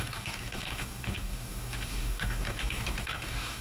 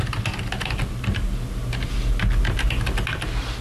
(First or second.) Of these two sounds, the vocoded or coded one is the first